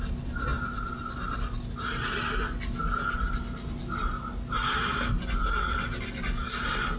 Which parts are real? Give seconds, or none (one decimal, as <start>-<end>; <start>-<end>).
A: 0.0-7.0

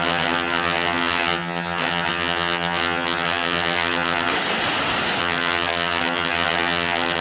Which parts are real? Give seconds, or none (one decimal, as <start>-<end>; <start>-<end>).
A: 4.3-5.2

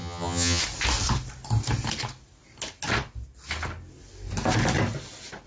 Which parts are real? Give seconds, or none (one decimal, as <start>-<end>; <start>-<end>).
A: 0.6-5.5